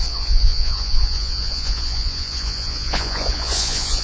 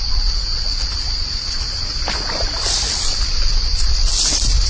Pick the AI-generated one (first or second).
first